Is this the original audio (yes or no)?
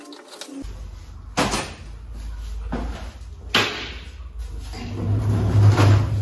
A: yes